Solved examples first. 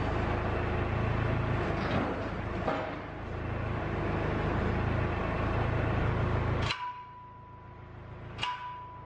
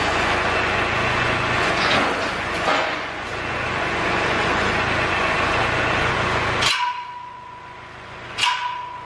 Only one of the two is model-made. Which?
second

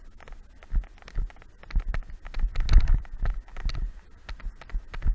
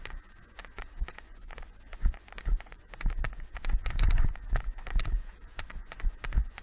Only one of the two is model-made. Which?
second